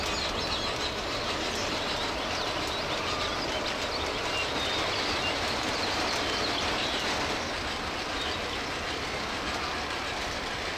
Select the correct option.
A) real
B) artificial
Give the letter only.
A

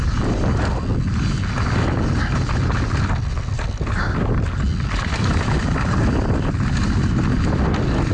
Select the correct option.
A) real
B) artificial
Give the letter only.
A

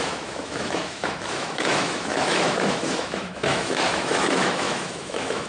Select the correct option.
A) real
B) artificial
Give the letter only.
B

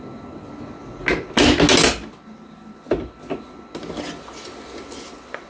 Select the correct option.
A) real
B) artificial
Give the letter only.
A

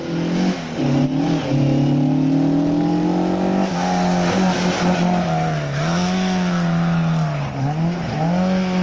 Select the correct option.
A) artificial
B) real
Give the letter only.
B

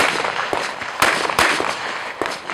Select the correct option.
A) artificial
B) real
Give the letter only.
B